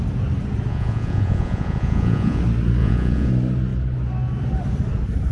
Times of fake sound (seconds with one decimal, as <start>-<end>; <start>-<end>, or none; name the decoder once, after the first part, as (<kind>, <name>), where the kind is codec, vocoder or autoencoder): 0.7-2.4 (vocoder, Vocos); 2.8-3.3